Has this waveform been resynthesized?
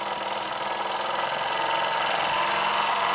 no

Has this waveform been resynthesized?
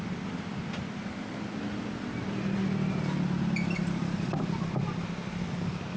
no